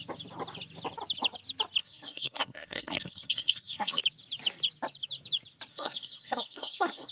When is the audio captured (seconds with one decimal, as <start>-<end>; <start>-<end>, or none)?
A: 0.0-1.8; 4.0-5.7